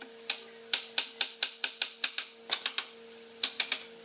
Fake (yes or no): no